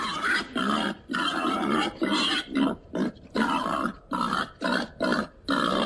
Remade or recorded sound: recorded